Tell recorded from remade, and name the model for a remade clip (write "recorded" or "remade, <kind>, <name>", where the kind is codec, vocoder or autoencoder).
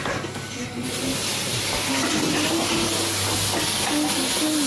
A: recorded